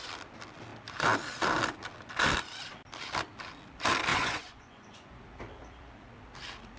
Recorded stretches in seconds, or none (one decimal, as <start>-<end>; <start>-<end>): 0.0-4.1; 5.2-6.8